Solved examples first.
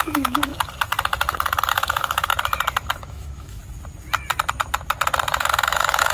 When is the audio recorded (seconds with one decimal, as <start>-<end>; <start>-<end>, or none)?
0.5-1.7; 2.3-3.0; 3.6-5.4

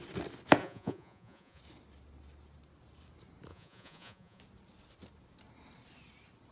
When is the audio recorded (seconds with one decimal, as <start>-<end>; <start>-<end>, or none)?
0.0-0.6; 1.6-3.5; 4.4-6.5

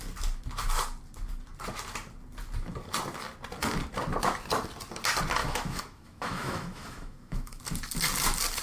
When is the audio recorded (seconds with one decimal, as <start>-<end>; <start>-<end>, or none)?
0.0-5.4; 7.6-8.6

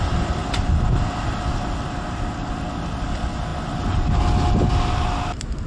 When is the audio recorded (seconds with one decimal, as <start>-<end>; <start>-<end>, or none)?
0.0-3.5; 4.7-5.7

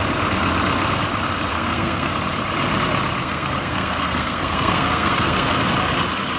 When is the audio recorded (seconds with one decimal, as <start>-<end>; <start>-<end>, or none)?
0.0-1.5; 2.1-3.2; 5.7-6.4

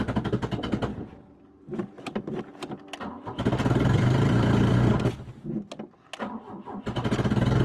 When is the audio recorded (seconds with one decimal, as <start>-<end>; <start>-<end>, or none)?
0.0-0.9; 5.1-7.6